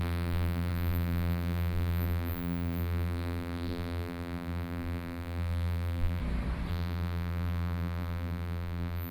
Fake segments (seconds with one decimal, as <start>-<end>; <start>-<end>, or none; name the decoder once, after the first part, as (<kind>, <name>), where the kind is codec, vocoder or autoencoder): 0.0-6.2 (vocoder, BigVGAN v2); 6.7-9.1